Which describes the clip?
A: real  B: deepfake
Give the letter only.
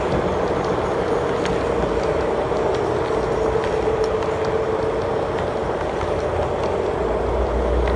A